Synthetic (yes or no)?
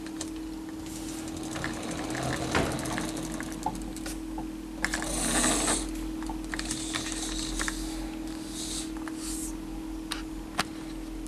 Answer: no